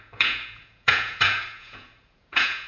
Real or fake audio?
fake